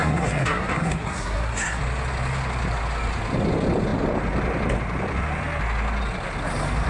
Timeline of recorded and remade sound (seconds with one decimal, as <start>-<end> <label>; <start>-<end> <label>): 0.0-1.8 remade; 1.8-6.9 recorded